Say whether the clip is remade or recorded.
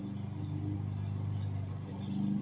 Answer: recorded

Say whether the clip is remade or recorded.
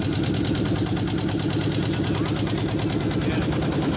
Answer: recorded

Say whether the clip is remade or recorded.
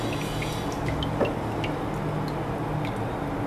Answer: recorded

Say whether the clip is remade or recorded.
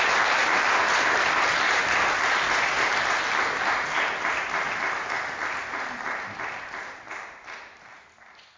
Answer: recorded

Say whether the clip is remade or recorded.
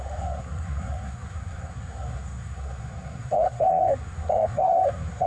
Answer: remade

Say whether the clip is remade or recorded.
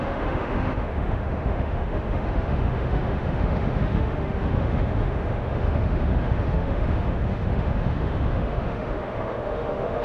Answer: remade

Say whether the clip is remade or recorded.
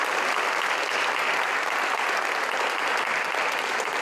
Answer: recorded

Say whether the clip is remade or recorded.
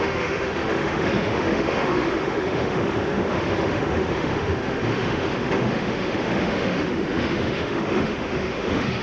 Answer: remade